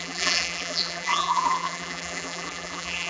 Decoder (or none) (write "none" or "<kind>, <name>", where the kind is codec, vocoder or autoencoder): vocoder, BigVGAN v2